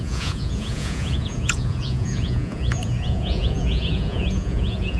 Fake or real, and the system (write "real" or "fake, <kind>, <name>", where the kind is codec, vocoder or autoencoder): fake, vocoder, Vocos